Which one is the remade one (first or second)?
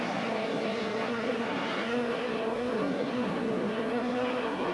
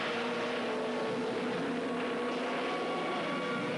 first